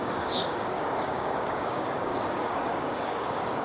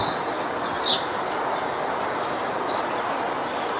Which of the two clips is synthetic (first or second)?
first